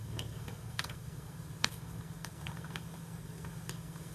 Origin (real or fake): fake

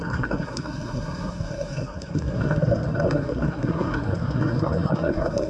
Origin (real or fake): fake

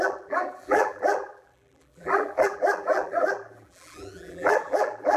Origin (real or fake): fake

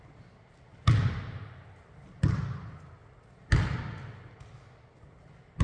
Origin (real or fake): real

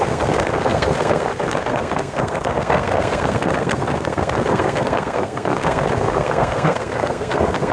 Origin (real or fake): fake